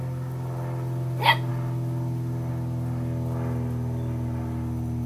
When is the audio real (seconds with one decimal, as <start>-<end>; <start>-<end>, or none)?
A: 0.0-5.1